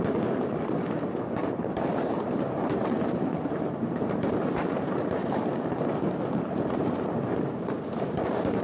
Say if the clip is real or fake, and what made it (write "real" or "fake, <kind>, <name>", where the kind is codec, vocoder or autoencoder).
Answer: fake, vocoder, BigVGAN v2